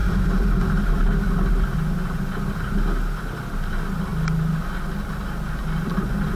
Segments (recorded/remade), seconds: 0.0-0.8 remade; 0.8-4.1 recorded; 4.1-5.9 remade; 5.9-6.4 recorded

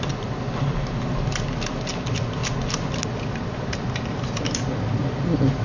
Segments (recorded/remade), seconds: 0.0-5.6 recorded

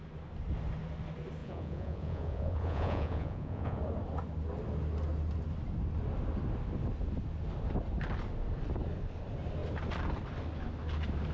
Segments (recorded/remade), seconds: 0.0-1.4 recorded; 1.4-3.8 remade; 3.8-11.3 recorded

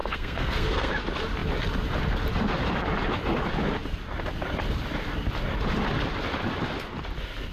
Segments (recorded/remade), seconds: 0.0-0.9 remade; 0.9-7.5 recorded

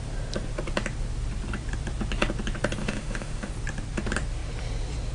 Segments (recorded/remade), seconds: 0.0-2.8 recorded; 2.8-3.5 remade; 3.5-5.1 recorded